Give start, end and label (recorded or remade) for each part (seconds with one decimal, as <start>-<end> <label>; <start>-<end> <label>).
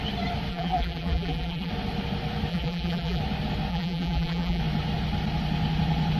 0.0-0.5 recorded; 0.5-1.7 remade; 1.7-2.5 recorded; 2.5-3.2 remade; 3.2-3.7 recorded; 3.7-4.6 remade; 4.6-6.2 recorded